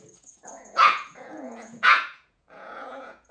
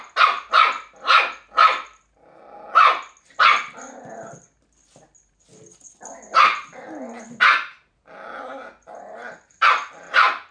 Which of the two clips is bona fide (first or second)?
second